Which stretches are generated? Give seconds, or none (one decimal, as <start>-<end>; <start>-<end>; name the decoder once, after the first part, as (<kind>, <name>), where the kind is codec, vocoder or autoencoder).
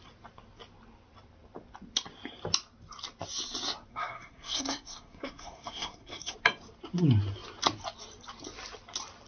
3.9-6.3 (codec, SNAC)